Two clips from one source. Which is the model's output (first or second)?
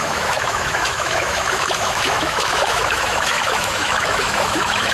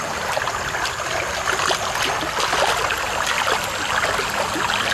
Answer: first